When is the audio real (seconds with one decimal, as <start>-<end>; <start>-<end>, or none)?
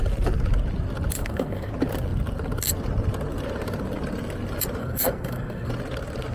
0.0-1.2; 1.7-4.8; 5.7-6.3